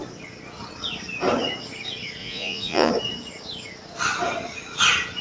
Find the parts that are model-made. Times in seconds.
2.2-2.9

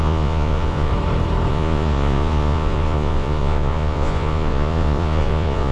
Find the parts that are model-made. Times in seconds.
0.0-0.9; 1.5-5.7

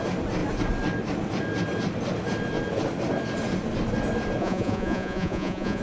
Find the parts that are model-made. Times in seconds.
4.4-5.8